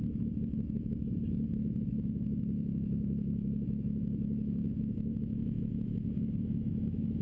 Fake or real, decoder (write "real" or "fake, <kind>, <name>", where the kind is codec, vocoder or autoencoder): fake, autoencoder, DAC-VAE